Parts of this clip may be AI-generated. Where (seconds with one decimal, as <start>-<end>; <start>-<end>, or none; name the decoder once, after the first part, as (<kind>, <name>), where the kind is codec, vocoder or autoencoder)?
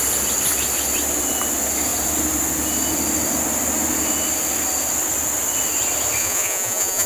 6.2-7.1 (vocoder, Vocos)